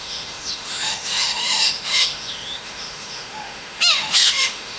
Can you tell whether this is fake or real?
fake